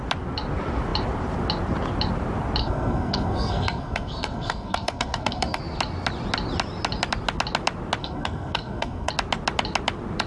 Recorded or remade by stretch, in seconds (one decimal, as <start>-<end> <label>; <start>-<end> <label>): 0.0-2.6 recorded; 2.6-5.6 remade; 5.6-8.0 recorded; 8.0-9.1 remade; 9.1-10.3 recorded